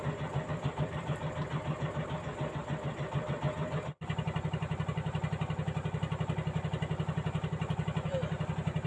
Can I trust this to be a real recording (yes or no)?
yes